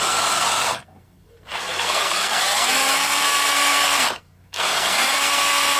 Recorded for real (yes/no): no